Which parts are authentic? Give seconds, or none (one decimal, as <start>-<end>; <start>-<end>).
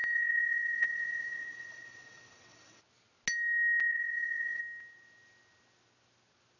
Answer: 2.8-3.9; 4.6-6.6